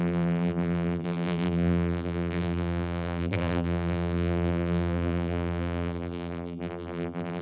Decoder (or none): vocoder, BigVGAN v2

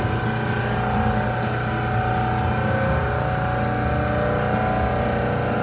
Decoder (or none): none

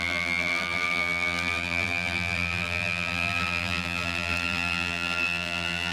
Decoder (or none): vocoder, BigVGAN v2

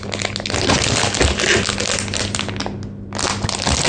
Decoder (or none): none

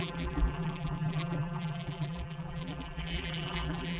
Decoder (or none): vocoder, BigVGAN v2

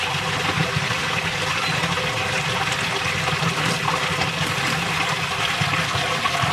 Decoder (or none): none